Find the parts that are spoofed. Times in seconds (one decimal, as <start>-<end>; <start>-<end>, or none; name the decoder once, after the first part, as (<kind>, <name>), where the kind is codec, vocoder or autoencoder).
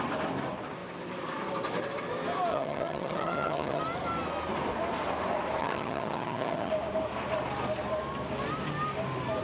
2.5-3.8 (vocoder, HiFi-GAN); 5.6-6.7